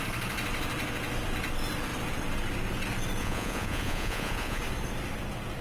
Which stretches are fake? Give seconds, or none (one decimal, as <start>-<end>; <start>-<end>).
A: 3.2-4.6